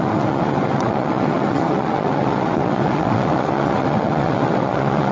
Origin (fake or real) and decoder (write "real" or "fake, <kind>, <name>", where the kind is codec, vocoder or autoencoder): fake, vocoder, WaveNeXt